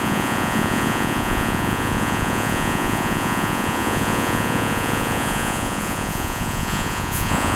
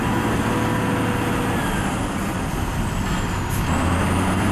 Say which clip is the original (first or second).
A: second